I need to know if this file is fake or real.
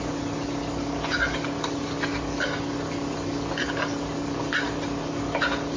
real